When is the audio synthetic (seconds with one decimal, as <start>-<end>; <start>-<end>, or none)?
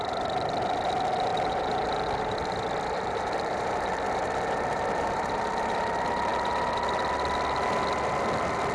1.3-5.8